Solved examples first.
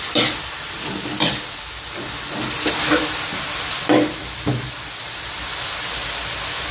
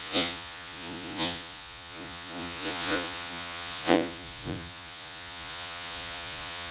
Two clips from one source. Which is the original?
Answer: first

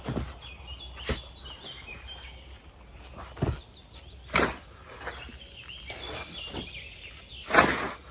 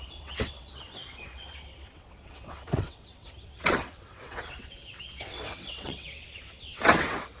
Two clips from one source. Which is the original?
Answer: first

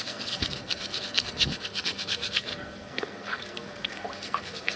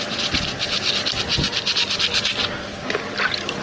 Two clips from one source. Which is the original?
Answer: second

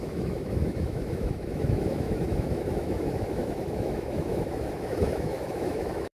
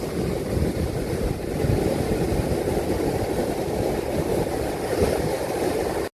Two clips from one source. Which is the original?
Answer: second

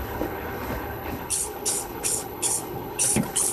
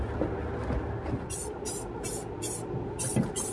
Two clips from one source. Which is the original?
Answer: second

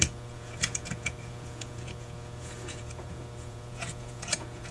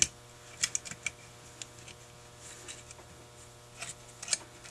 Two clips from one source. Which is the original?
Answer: second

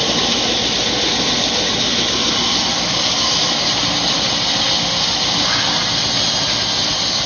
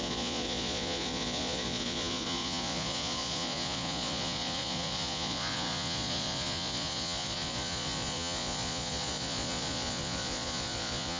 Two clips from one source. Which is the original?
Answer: first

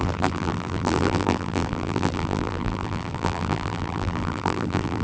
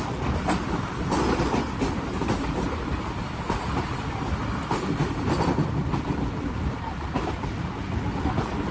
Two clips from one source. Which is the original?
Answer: second